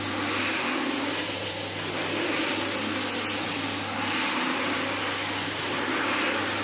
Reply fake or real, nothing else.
real